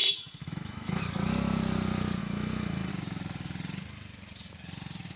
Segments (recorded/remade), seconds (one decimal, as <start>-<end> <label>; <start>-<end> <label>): 0.0-1.0 remade; 1.0-2.2 recorded; 2.2-2.9 remade; 2.9-5.2 recorded